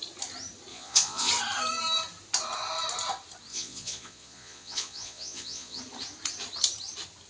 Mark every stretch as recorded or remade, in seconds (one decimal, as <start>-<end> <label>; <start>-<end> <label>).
0.0-0.7 recorded; 0.7-1.3 remade; 1.3-3.5 recorded; 3.5-5.8 remade; 5.8-7.3 recorded